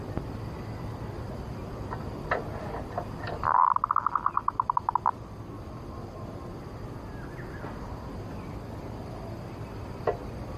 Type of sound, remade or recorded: recorded